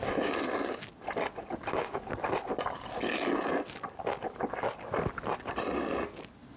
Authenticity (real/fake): real